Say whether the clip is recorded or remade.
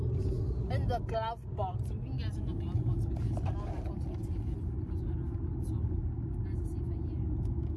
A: recorded